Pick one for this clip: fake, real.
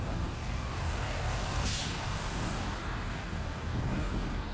fake